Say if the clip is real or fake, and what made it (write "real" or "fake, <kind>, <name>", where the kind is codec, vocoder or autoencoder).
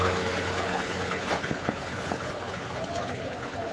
fake, codec, HILCodec